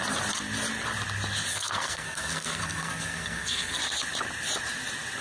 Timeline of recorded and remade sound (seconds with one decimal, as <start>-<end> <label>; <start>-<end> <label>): 0.0-1.5 recorded; 1.5-3.8 remade; 3.8-5.2 recorded